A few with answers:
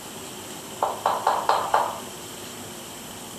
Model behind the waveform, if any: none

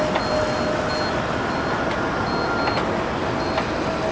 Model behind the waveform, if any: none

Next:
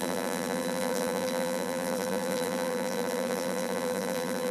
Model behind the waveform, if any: vocoder, BigVGAN v2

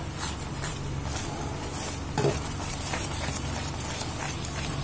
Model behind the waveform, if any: vocoder, BigVGAN v2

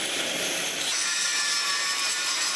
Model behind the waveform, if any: vocoder, BigVGAN v2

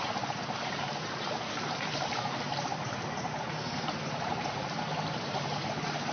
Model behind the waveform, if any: vocoder, BigVGAN v2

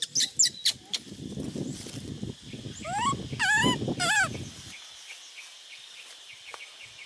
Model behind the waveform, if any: none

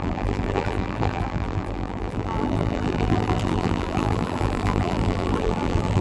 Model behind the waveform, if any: vocoder, BigVGAN v2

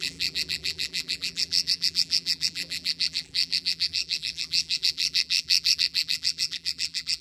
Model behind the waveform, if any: vocoder, BigVGAN v2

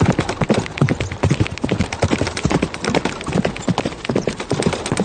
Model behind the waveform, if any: none